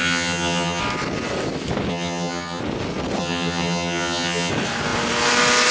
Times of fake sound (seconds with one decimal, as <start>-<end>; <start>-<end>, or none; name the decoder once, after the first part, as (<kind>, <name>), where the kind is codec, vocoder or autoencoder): 0.0-0.8 (vocoder, HiFi-GAN); 1.9-2.6; 3.2-4.5